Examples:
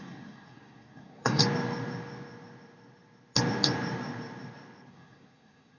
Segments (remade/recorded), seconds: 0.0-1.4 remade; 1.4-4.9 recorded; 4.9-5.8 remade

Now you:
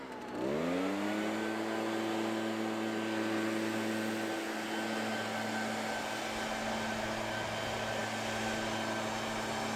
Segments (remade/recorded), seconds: 0.0-9.8 recorded